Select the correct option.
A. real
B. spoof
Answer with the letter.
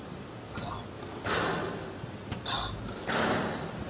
A